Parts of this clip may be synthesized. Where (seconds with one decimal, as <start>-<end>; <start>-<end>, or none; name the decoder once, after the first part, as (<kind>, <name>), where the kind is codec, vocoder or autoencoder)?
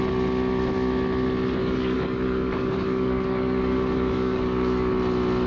1.6-4.9 (codec, DAC)